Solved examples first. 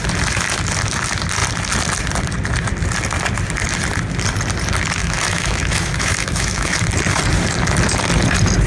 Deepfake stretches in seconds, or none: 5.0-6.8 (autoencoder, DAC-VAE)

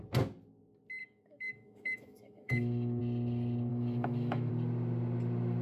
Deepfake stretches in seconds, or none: 1.0-3.0 (autoencoder, DAC-VAE); 3.7-4.5